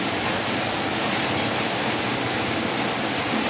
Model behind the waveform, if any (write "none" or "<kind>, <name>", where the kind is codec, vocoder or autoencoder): none